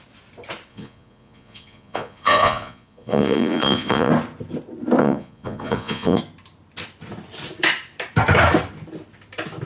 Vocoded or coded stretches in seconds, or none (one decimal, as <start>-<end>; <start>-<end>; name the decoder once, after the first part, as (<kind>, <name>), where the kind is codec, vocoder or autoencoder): 0.7-4.1 (vocoder, Vocos); 5.0-6.2